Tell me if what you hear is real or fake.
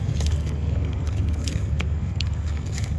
fake